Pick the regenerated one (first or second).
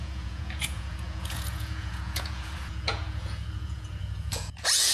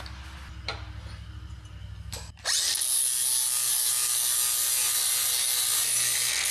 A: first